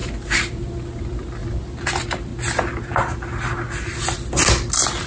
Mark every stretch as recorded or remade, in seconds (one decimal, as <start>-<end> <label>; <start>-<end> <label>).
0.0-2.3 remade; 2.3-4.0 recorded; 4.0-5.1 remade